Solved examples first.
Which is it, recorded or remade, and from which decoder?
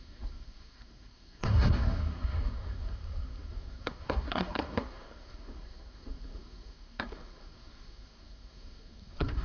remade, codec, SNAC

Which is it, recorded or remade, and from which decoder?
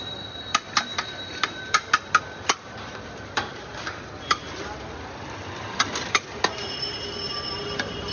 remade, vocoder, BigVGAN v2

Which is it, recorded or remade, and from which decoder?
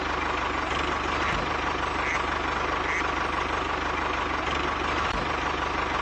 recorded